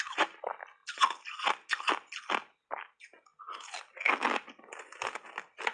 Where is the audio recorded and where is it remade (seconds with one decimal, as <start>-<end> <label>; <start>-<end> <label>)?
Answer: 0.0-5.7 recorded